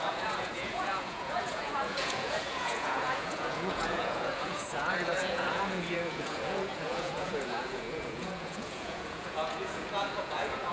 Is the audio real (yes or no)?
no